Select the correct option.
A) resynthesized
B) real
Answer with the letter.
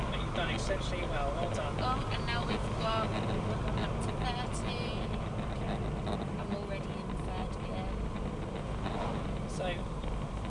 B